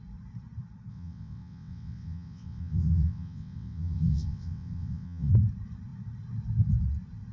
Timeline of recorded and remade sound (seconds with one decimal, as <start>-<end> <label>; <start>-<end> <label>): 0.0-0.9 recorded; 0.9-5.3 remade; 5.3-7.3 recorded